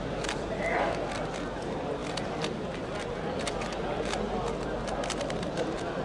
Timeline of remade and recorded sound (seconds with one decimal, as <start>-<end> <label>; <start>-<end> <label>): 0.0-6.0 recorded

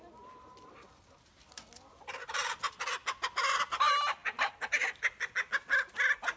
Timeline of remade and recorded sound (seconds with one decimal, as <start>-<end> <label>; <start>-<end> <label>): 0.0-6.4 recorded

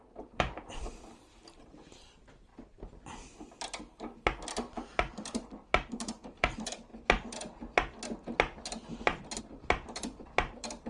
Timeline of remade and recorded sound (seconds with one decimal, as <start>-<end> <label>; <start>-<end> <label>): 0.0-2.5 remade; 2.5-4.5 recorded; 4.5-6.9 remade; 6.9-9.4 recorded; 9.4-10.9 remade

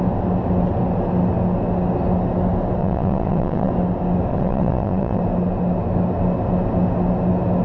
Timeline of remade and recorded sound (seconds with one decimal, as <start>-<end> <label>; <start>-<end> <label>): 0.0-2.8 recorded; 2.8-3.7 remade; 3.7-4.3 recorded; 4.3-5.2 remade; 5.2-7.6 recorded

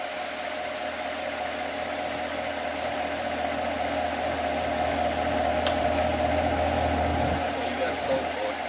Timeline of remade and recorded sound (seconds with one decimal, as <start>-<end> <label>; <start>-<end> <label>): 0.0-8.7 recorded